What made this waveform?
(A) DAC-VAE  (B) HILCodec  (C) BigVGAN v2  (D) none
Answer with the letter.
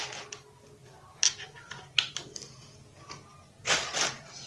D